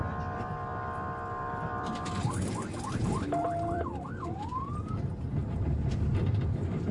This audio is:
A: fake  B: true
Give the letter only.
A